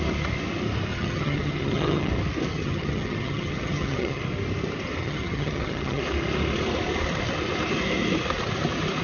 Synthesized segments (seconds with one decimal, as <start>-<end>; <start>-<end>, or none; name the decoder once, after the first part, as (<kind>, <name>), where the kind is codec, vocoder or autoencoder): 0.9-2.1 (vocoder, HiFi-GAN); 2.5-4.2; 5.0-6.0